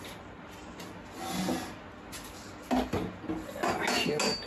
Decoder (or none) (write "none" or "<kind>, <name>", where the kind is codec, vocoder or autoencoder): none